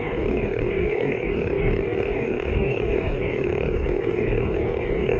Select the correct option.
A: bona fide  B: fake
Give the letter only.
B